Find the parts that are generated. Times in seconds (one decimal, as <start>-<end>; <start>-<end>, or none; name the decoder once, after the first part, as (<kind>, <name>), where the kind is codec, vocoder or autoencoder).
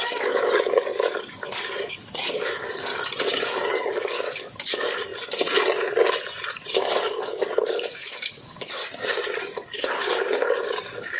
0.0-2.9 (codec, DAC); 3.9-5.1; 6.7-8.8; 9.4-11.2